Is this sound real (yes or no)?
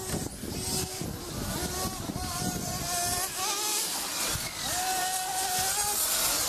yes